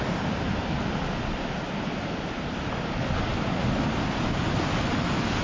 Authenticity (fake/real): real